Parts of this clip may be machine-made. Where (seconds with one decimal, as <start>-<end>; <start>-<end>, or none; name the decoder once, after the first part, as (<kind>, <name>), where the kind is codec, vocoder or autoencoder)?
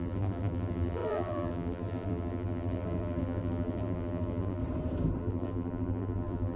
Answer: 0.0-4.6 (vocoder, BigVGAN v2); 5.2-6.6